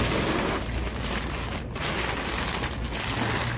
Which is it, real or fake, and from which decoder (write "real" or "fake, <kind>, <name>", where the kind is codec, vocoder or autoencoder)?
real